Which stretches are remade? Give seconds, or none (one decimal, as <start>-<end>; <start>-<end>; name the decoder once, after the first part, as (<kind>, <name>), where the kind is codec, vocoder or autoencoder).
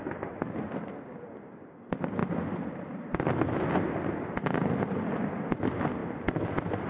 2.2-4.3 (vocoder, BigVGAN v2); 6.0-6.9